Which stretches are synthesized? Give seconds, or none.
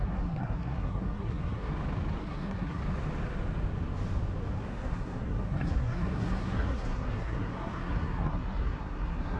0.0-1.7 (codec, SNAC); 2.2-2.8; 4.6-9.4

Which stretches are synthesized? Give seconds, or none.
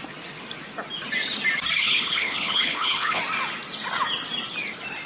1.8-3.2 (codec, HILCodec)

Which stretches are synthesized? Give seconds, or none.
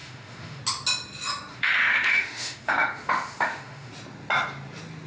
0.0-0.6 (autoencoder, DAC-VAE); 1.5-3.9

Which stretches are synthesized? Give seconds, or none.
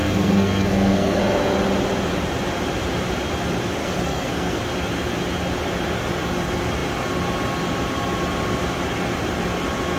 0.0-1.2 (codec, SNAC); 3.8-4.6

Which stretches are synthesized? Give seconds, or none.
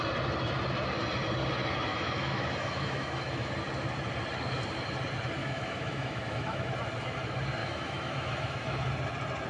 1.9-3.5 (autoencoder, DAC-VAE); 5.4-6.7; 7.6-8.9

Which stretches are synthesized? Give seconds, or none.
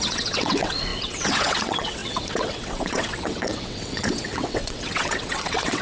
0.0-5.8 (vocoder, WaveNeXt)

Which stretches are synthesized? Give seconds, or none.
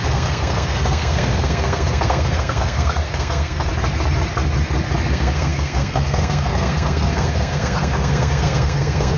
0.0-3.7 (codec, SNAC); 5.1-9.2